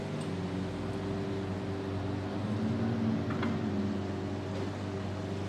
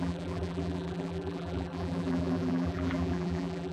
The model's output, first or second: second